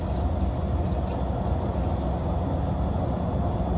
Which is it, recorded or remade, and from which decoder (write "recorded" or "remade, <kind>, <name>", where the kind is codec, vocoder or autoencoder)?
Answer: recorded